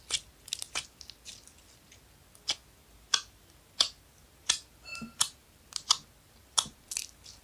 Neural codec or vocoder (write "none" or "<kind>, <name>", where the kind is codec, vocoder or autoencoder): none